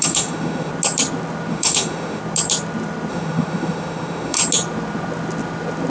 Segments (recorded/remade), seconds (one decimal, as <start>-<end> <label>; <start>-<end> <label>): 0.0-0.7 remade; 0.7-1.5 recorded; 1.5-2.2 remade; 2.2-3.1 recorded; 3.1-4.4 remade; 4.4-5.9 recorded